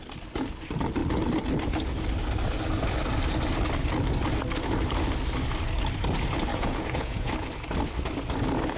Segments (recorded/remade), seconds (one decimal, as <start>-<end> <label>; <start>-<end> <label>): 0.0-6.5 recorded; 6.5-7.3 remade; 7.3-8.8 recorded